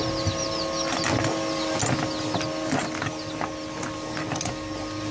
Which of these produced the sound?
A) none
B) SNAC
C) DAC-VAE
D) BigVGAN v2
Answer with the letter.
A